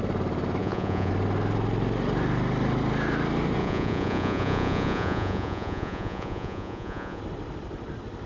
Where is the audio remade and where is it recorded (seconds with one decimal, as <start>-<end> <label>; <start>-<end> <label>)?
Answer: 0.0-0.6 recorded; 0.6-1.1 remade; 1.1-3.6 recorded; 3.6-7.2 remade; 7.2-8.3 recorded